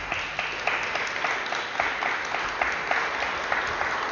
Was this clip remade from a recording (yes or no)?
no